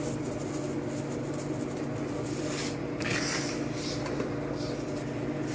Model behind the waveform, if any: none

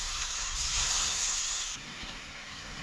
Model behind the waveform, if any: codec, SNAC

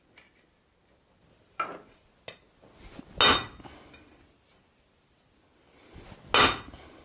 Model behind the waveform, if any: none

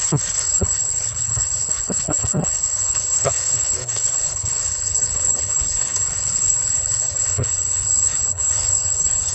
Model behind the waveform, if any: codec, HILCodec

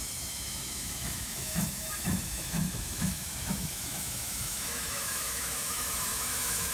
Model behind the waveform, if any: autoencoder, DAC-VAE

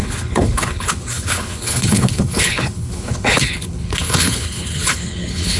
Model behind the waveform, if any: codec, HILCodec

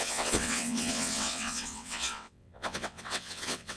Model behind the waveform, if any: vocoder, WaveNeXt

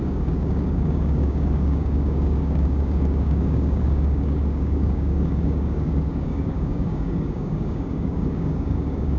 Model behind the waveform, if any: codec, DAC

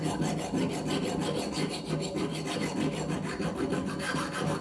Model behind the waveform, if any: none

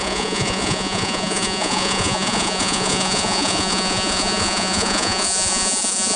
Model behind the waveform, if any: vocoder, Vocos